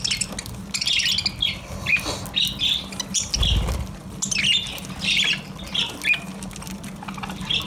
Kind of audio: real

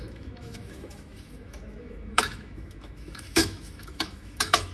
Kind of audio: fake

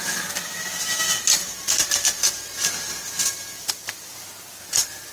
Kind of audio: real